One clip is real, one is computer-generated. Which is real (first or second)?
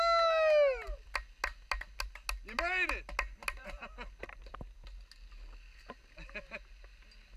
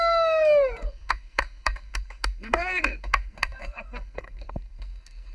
first